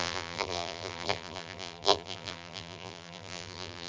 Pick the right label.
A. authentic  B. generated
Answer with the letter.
B